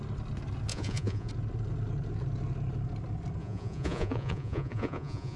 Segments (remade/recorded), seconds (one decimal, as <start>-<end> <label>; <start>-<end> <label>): 0.0-0.7 recorded; 0.7-1.3 remade; 1.3-3.4 recorded; 3.4-5.4 remade